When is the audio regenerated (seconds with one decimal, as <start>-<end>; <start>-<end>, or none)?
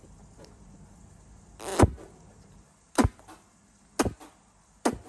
none